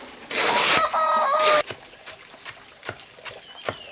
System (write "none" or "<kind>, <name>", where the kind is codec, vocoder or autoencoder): none